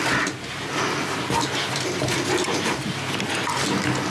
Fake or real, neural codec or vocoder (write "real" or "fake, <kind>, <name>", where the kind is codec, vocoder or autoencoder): real